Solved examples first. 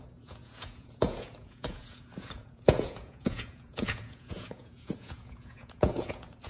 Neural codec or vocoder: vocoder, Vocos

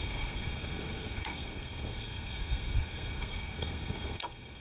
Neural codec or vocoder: codec, SNAC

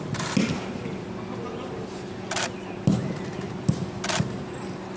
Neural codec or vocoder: none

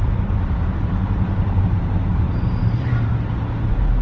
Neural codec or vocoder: vocoder, BigVGAN v2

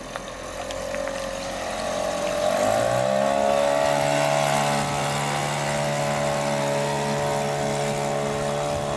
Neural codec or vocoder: none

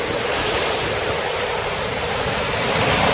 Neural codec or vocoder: vocoder, BigVGAN v2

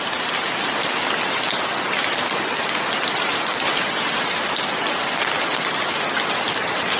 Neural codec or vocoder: none